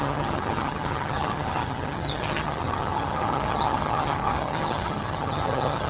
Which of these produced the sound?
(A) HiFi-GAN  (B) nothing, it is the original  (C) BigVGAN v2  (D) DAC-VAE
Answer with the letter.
A